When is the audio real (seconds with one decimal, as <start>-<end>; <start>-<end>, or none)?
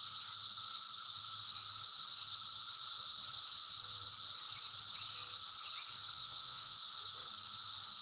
0.0-6.1; 6.8-8.0